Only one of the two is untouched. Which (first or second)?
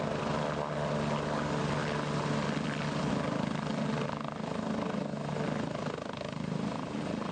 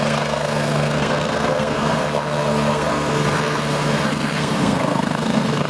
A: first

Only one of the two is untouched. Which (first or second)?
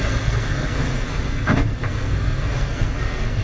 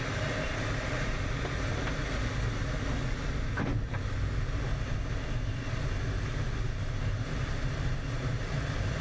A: second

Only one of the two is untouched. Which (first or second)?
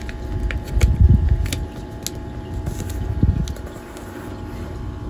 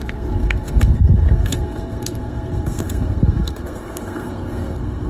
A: first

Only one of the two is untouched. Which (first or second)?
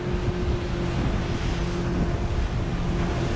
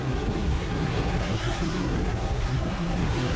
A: first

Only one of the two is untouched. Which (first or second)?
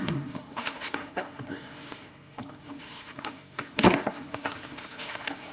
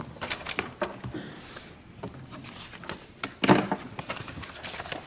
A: second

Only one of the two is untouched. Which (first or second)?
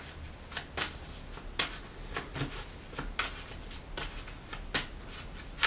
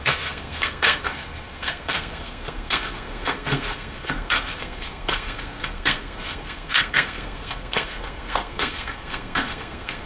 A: first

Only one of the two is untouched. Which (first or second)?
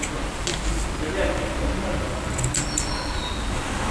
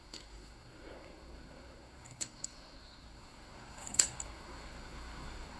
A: first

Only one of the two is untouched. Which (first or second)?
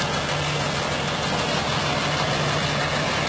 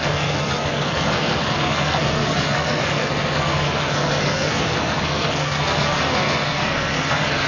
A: first